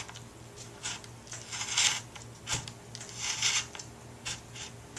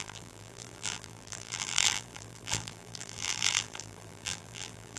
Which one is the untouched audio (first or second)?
first